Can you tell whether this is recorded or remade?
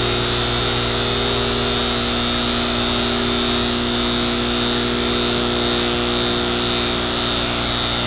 recorded